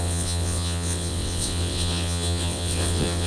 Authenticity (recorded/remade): remade